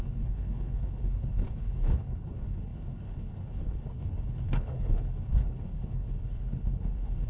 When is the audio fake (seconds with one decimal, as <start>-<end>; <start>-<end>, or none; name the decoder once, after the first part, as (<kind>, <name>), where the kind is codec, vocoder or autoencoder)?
0.0-7.3 (codec, HILCodec)